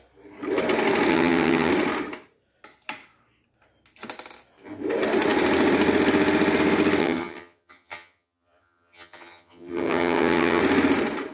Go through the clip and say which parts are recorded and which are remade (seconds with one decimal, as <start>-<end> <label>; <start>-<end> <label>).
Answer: 0.0-1.1 recorded; 1.1-1.7 remade; 1.7-7.0 recorded; 7.0-10.6 remade; 10.6-11.3 recorded